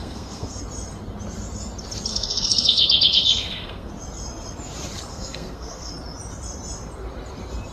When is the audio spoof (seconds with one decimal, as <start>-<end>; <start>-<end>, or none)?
0.0-0.6; 2.1-3.9; 5.1-5.9